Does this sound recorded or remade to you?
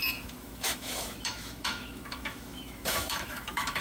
remade